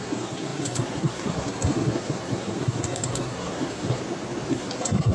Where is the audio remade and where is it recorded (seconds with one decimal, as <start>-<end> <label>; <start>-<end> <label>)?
0.0-4.0 remade; 4.0-4.5 recorded; 4.5-5.1 remade